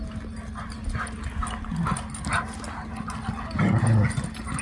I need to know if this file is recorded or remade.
recorded